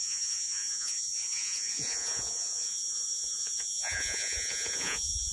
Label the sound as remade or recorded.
remade